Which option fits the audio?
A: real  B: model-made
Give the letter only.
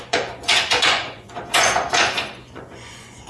B